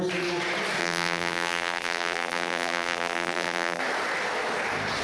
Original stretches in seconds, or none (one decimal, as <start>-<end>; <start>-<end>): 0.0-0.8; 3.8-5.0